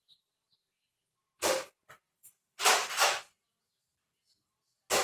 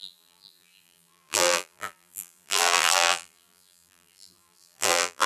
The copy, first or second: second